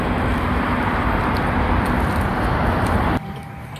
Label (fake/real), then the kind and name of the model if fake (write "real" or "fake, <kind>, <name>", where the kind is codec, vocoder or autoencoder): real